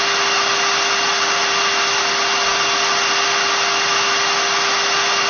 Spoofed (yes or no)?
no